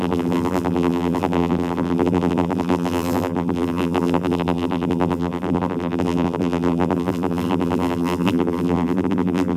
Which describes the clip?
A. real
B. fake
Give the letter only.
B